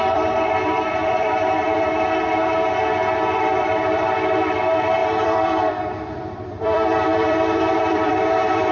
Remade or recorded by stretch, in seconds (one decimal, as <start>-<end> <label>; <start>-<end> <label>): 0.0-1.9 remade; 1.9-3.1 recorded; 3.1-8.7 remade

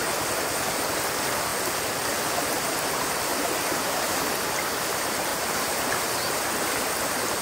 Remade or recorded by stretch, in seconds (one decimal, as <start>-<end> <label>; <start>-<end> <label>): 0.0-3.3 recorded; 3.3-4.4 remade; 4.4-5.3 recorded; 5.3-6.5 remade; 6.5-7.4 recorded

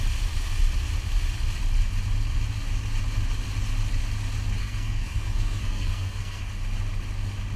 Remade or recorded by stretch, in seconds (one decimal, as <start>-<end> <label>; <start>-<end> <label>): 0.0-4.6 recorded; 4.6-6.5 remade; 6.5-7.6 recorded

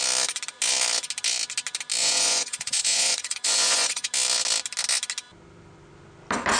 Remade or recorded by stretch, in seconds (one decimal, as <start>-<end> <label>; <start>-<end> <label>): 0.0-2.0 recorded; 2.0-4.1 remade; 4.1-6.6 recorded